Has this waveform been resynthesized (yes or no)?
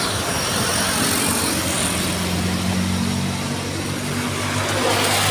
no